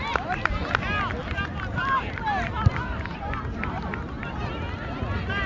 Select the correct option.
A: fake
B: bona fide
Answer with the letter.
B